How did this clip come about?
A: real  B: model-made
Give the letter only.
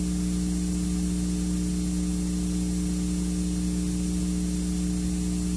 A